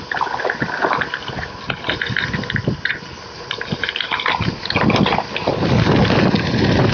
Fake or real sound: real